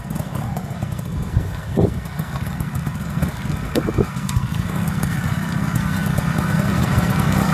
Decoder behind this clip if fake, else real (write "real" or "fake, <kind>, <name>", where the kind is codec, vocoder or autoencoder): fake, codec, SNAC